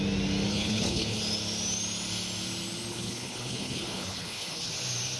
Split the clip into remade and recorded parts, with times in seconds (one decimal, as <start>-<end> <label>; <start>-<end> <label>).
0.0-0.5 recorded; 0.5-1.2 remade; 1.2-2.9 recorded; 2.9-4.7 remade; 4.7-5.2 recorded